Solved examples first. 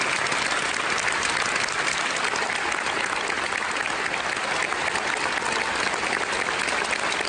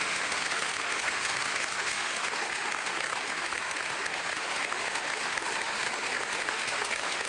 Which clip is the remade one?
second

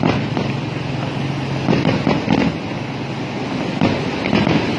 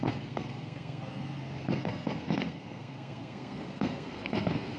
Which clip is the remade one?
second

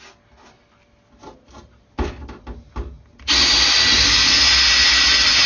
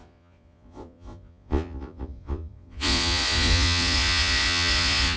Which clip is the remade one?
second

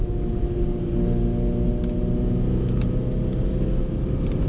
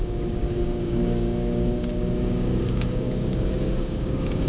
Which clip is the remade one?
second